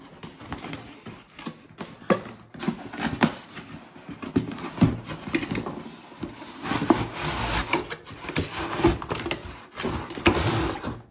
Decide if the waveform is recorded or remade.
recorded